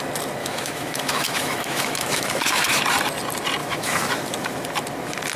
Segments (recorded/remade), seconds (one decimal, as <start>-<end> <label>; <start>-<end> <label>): 0.0-0.4 recorded; 0.4-2.8 remade; 2.8-3.6 recorded; 3.6-4.1 remade; 4.1-5.4 recorded